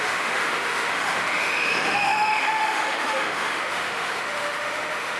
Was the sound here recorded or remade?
remade